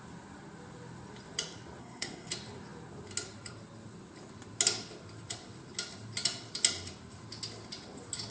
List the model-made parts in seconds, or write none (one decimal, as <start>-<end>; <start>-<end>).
1.8-2.3